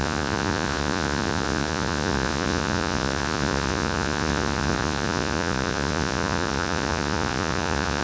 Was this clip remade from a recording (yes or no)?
yes